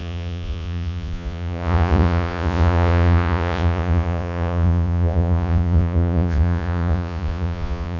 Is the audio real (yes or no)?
no